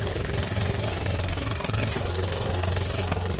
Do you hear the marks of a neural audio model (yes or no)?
yes